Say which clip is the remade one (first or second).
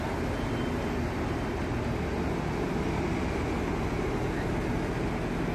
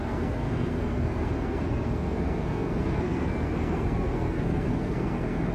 second